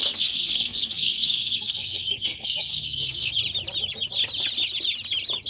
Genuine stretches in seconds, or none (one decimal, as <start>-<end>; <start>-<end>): 3.3-5.5